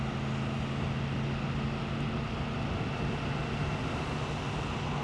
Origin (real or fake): real